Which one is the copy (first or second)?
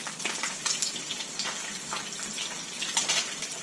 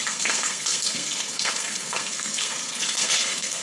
second